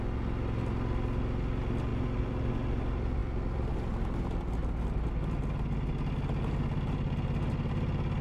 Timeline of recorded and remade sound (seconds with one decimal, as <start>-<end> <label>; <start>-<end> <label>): 0.0-8.2 recorded